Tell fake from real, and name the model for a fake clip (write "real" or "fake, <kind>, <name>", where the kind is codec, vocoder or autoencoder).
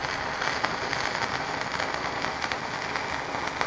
real